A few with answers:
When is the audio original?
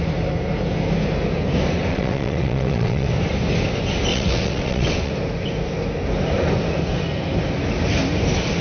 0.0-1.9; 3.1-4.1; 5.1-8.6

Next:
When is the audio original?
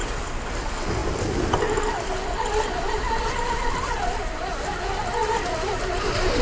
0.0-6.4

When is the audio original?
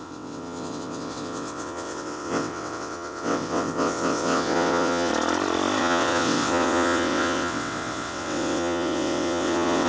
5.1-5.8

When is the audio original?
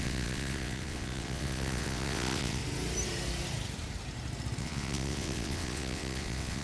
2.6-4.6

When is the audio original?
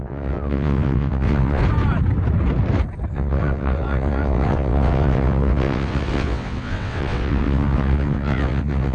1.6-3.1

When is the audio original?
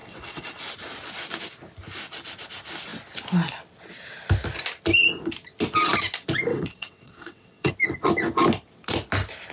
0.6-6.5; 7.7-9.5